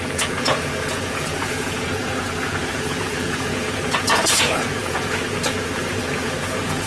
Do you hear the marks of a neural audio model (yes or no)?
yes